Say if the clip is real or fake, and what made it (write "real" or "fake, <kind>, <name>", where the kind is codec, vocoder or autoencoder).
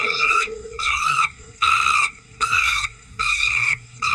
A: fake, codec, SNAC